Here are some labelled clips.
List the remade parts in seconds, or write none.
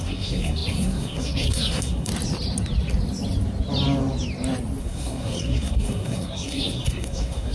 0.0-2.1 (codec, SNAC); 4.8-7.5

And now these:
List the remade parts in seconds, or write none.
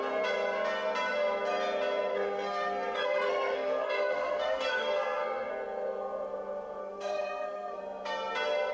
2.1-5.5 (codec, SNAC); 6.8-7.8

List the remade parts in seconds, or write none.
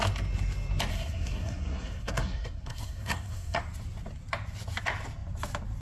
0.9-3.6 (codec, SNAC)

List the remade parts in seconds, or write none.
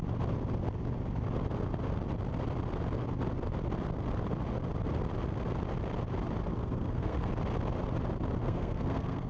6.6-7.3 (codec, SNAC); 8.4-9.3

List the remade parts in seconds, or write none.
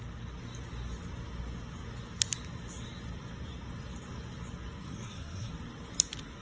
4.8-5.5 (codec, SNAC)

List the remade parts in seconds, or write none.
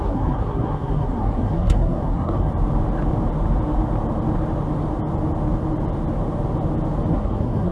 0.0-2.5 (codec, SNAC); 7.1-7.7